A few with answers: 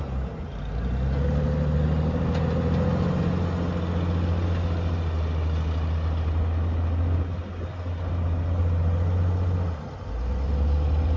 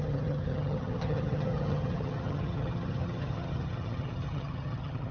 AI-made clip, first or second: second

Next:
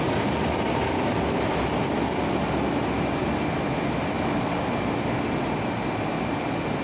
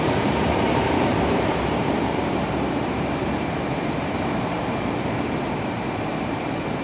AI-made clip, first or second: second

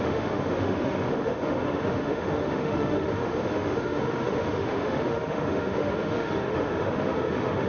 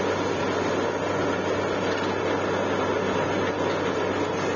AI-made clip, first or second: first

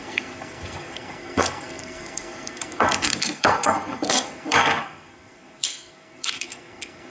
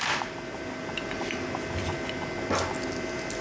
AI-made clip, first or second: first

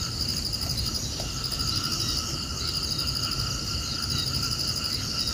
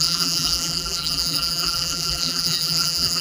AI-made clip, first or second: second